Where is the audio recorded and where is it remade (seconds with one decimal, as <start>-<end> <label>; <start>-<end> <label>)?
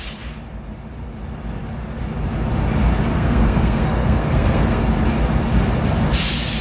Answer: 0.0-3.1 recorded; 3.1-4.8 remade; 4.8-6.6 recorded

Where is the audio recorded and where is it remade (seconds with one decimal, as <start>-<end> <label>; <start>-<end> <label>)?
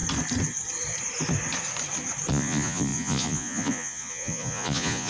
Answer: 0.0-2.3 recorded; 2.3-5.1 remade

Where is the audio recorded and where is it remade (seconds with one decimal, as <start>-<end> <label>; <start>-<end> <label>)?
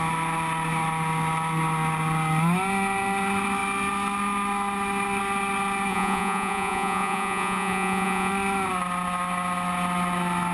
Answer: 0.0-5.9 recorded; 5.9-8.3 remade; 8.3-10.5 recorded